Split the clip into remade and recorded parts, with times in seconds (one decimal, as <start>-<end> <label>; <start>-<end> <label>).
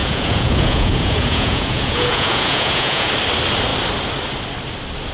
0.0-3.1 remade; 3.1-5.1 recorded